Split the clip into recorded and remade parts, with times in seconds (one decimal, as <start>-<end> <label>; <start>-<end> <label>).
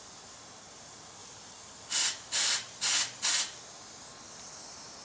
0.0-1.2 recorded; 1.2-3.6 remade; 3.6-5.0 recorded